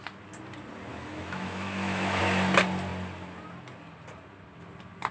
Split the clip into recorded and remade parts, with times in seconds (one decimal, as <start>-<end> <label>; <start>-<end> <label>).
0.0-0.9 recorded; 0.9-2.2 remade; 2.2-5.1 recorded